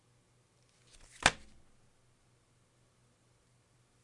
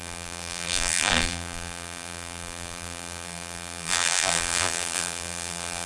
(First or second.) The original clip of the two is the first